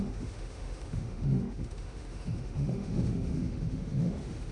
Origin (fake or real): fake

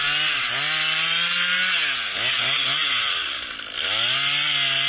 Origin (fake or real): real